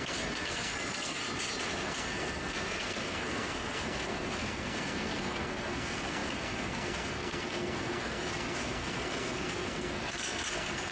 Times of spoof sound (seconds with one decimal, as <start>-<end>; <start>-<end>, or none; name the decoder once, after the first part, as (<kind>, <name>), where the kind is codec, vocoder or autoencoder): 0.0-1.2 (codec, SNAC); 1.8-10.9